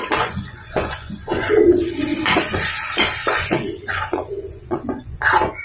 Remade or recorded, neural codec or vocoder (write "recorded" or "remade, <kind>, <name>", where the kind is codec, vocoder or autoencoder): remade, vocoder, Vocos